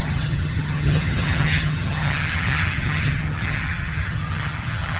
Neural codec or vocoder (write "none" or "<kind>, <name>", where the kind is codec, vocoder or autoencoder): vocoder, HiFi-GAN